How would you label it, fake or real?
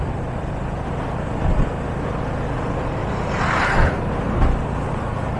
fake